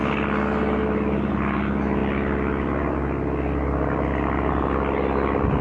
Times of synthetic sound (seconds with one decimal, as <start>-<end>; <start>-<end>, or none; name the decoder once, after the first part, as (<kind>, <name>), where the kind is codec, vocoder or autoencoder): none